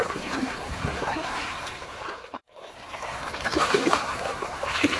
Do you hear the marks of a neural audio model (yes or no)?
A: yes